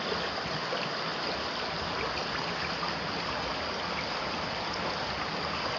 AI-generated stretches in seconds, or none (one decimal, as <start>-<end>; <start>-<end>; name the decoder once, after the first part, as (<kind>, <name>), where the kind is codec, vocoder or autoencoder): none